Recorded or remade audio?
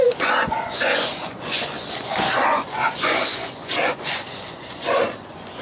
remade